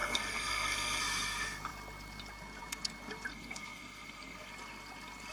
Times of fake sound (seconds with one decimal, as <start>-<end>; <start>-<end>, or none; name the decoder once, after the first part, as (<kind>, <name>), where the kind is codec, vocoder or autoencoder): 0.0-1.0 (codec, SNAC); 3.3-4.5